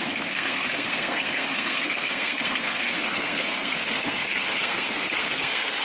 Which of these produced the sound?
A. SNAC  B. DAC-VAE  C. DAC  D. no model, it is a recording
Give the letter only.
A